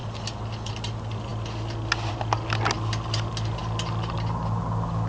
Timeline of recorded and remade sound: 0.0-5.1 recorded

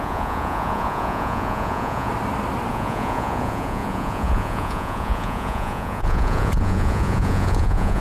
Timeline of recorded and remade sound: 0.0-2.1 remade; 2.1-2.7 recorded; 2.7-8.0 remade

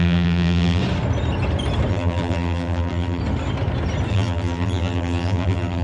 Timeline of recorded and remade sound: 0.0-0.8 remade; 0.8-1.9 recorded; 1.9-3.2 remade; 3.2-4.1 recorded; 4.1-5.8 remade

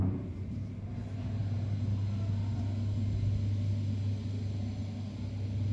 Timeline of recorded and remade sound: 0.0-5.7 recorded

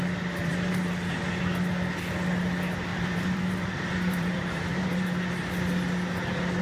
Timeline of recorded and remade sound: 0.0-0.4 recorded; 0.4-1.4 remade; 1.4-2.9 recorded; 2.9-5.5 remade; 5.5-6.6 recorded

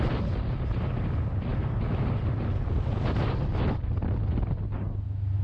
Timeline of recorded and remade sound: 0.0-5.4 recorded